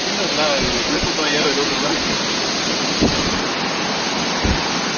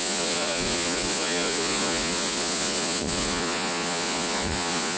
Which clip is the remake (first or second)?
second